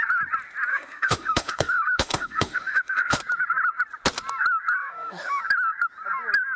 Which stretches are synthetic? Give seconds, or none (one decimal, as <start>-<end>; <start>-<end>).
0.7-3.2; 4.8-5.4